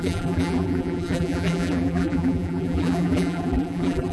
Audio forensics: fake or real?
fake